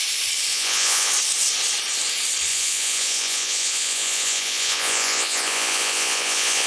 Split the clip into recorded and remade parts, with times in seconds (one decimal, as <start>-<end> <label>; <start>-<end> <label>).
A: 0.0-0.5 recorded; 0.5-1.1 remade; 1.1-2.5 recorded; 2.5-6.7 remade